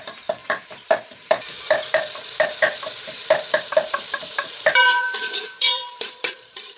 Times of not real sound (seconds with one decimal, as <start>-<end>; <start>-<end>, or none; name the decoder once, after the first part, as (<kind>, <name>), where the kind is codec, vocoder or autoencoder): 0.0-6.8 (vocoder, BigVGAN v2)